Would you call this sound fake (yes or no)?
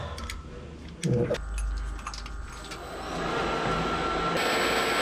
no